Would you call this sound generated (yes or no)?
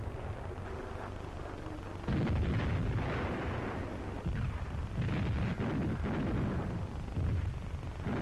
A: no